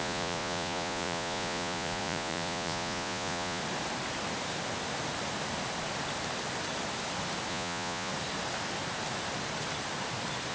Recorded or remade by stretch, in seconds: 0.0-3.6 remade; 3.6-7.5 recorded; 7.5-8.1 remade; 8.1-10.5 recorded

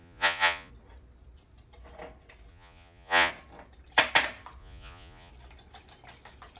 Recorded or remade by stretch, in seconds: 0.0-0.7 remade; 0.7-2.5 recorded; 2.5-3.3 remade; 3.3-4.6 recorded; 4.6-5.3 remade; 5.3-6.6 recorded

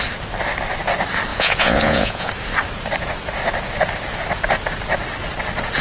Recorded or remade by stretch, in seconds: 0.0-1.3 recorded; 1.3-2.3 remade; 2.3-5.8 recorded

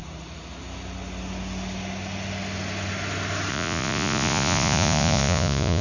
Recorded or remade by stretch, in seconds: 0.0-3.5 recorded; 3.5-5.8 remade

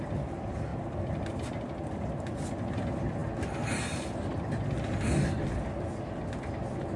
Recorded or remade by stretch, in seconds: 0.0-7.0 recorded

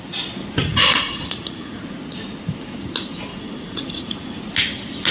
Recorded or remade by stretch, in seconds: 0.0-0.6 recorded; 0.6-1.8 remade; 1.8-3.3 recorded; 3.3-4.4 remade; 4.4-5.1 recorded